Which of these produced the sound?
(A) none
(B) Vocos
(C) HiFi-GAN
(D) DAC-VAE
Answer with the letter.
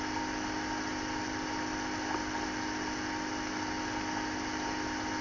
A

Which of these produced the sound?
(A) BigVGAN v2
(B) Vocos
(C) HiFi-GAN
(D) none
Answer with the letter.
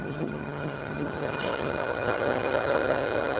C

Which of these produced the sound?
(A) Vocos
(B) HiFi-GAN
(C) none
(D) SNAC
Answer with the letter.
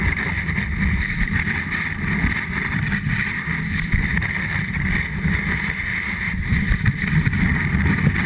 C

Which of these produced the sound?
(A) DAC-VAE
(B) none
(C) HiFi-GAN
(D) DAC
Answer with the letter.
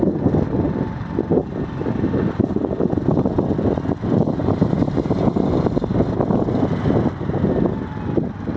B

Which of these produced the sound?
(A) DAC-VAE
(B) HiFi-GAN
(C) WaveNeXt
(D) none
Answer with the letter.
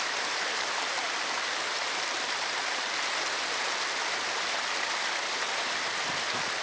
D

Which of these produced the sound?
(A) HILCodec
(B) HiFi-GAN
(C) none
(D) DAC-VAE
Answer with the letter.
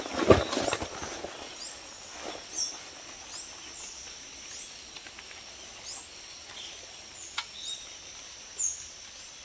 C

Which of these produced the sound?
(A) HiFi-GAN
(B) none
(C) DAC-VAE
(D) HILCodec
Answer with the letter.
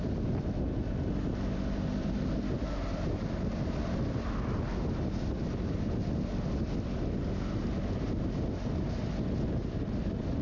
B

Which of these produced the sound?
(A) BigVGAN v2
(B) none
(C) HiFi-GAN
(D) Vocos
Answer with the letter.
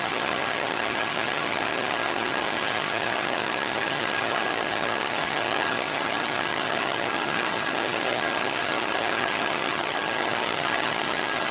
C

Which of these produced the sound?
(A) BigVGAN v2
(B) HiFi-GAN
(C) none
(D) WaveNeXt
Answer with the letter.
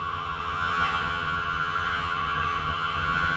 B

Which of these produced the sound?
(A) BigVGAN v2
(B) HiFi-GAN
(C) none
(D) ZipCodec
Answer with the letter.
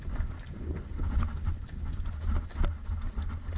C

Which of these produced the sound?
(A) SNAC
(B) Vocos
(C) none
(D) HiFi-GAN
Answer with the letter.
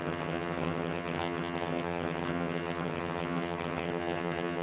D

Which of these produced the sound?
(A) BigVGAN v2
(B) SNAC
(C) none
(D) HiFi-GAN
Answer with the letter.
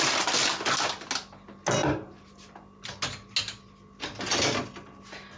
C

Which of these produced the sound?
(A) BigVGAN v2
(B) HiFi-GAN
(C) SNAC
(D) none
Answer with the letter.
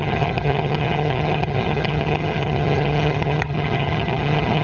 B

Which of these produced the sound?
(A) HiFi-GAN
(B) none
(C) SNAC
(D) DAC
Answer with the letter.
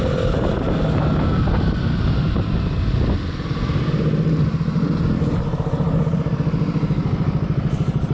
B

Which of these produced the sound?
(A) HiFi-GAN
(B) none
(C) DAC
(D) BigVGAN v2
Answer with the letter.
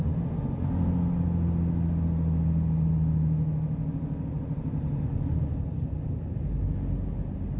B